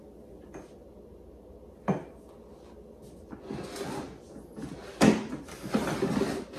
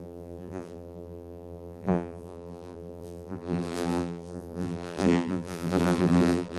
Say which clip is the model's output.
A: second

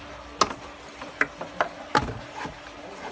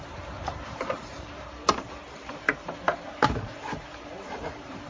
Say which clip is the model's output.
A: second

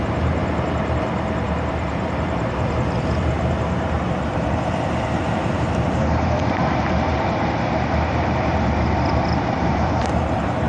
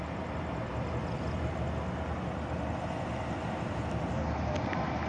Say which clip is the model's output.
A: first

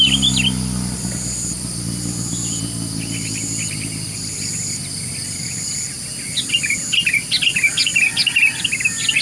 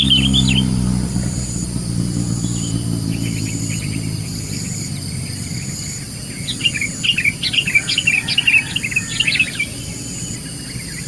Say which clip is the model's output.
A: second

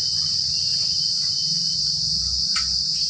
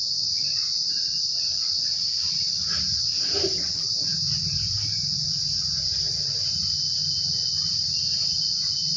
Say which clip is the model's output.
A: second